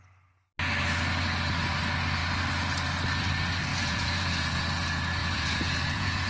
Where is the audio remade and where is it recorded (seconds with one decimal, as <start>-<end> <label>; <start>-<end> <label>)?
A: 0.0-3.7 recorded; 3.7-4.6 remade; 4.6-5.2 recorded; 5.2-6.3 remade